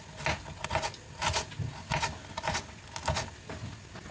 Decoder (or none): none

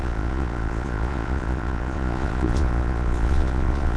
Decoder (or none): vocoder, Vocos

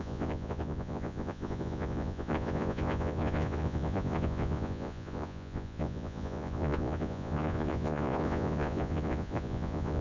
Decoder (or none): vocoder, Vocos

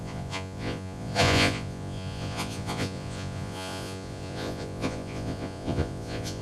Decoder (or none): vocoder, Vocos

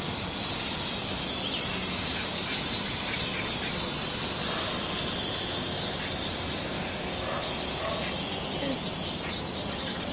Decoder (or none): none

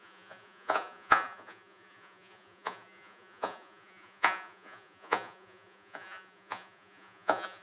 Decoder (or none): vocoder, Vocos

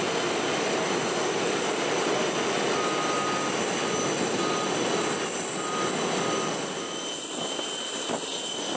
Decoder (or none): none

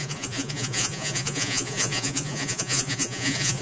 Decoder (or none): vocoder, Vocos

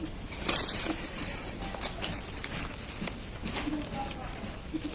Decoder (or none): none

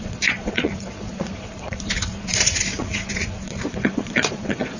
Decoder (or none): vocoder, Vocos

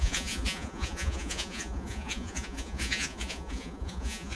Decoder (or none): vocoder, Vocos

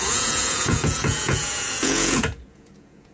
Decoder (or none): vocoder, Vocos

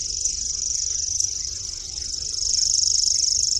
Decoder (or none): vocoder, Vocos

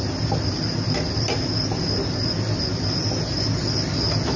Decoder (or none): none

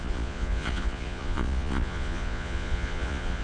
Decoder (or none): vocoder, Vocos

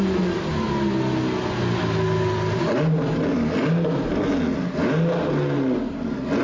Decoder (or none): none